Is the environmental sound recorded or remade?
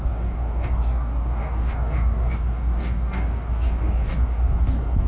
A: remade